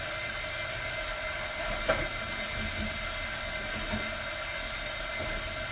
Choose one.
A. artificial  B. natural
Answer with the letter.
B